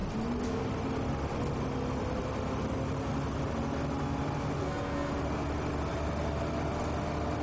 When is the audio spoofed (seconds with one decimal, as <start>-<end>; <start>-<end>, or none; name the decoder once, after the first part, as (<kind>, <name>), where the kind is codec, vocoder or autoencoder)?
4.6-5.1 (codec, SNAC)